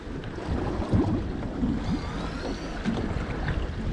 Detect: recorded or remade recorded